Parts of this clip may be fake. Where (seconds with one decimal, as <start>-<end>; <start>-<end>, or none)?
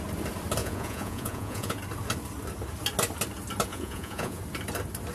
0.6-1.8; 3.7-4.4